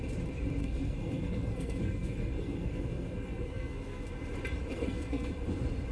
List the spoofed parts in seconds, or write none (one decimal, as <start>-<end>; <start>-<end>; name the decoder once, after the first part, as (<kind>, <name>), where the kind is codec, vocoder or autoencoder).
0.6-4.1 (codec, SNAC); 4.7-5.3